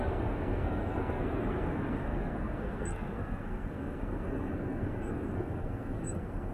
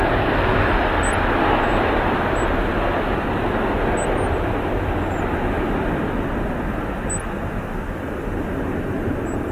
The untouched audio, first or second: second